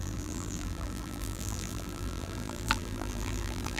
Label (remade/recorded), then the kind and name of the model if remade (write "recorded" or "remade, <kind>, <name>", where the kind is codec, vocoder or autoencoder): remade, vocoder, BigVGAN v2